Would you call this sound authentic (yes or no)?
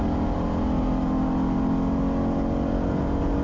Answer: yes